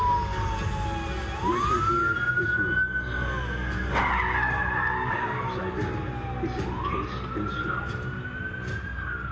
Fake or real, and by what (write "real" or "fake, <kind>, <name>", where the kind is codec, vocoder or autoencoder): real